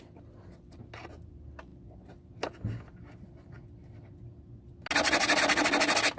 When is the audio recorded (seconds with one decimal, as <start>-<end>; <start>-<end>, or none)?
0.0-6.2